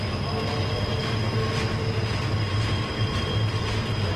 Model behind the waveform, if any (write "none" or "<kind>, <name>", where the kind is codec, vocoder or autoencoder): none